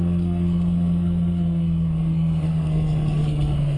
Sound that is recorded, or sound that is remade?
remade